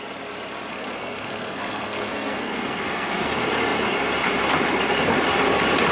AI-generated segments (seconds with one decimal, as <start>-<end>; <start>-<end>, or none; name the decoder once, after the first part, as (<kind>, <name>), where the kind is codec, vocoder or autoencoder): 0.7-3.3 (codec, SNAC)